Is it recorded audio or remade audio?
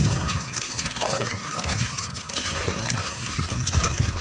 remade